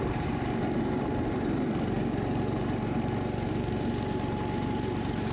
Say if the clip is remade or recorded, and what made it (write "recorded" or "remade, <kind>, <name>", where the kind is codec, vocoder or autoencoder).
remade, vocoder, BigVGAN v2